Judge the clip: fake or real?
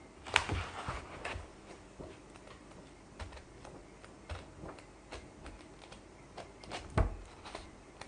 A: fake